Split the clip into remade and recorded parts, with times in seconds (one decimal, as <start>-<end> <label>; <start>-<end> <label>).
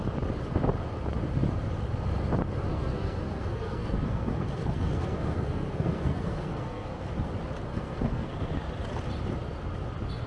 0.0-2.7 recorded; 2.7-7.3 remade; 7.3-7.7 recorded; 7.7-8.5 remade; 8.5-10.3 recorded